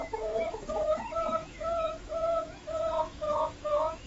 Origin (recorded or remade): remade